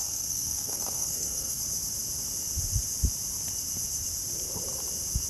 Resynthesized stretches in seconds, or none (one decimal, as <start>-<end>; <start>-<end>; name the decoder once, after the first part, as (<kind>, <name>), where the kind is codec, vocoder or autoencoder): 0.0-1.6 (codec, SNAC)

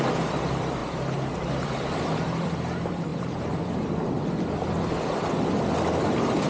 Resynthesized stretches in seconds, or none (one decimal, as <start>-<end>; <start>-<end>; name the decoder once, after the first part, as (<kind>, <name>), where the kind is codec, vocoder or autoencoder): 0.0-6.5 (vocoder, BigVGAN v2)

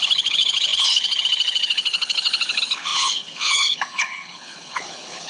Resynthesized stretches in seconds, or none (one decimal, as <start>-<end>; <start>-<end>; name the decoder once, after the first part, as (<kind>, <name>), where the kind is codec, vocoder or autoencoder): 0.0-5.3 (codec, HILCodec)